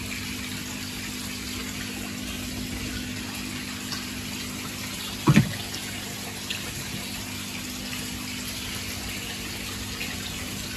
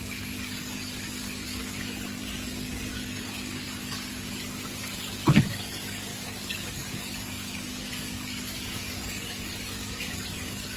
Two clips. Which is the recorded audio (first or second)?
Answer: first